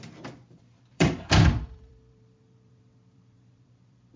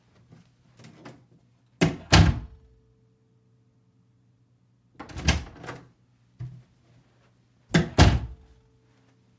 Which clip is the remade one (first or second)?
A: first